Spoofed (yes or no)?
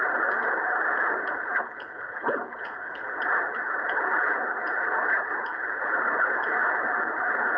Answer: yes